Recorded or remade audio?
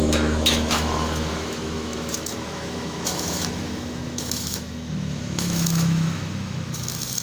remade